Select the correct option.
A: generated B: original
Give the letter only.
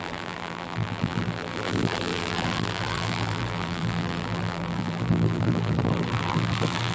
A